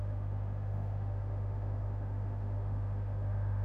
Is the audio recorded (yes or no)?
no